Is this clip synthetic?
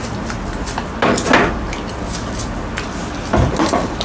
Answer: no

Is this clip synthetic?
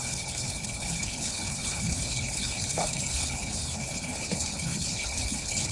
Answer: yes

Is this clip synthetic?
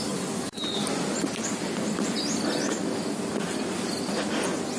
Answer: no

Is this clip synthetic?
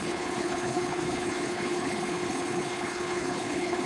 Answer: yes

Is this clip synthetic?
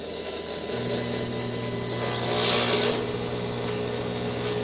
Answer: no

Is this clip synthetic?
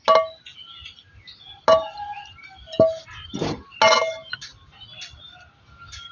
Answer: no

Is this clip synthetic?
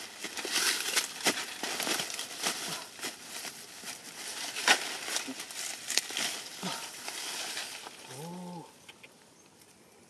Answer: no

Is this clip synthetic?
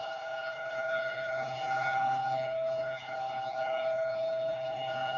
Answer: yes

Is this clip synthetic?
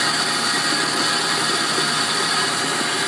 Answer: no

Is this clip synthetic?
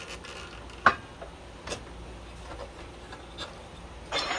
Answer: no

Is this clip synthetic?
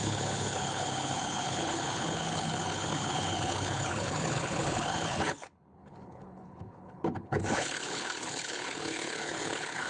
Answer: yes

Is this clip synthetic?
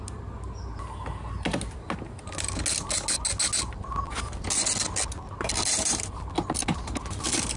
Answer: no